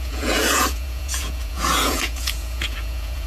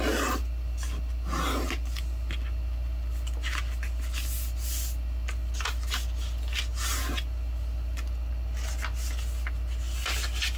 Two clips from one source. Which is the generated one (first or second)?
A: first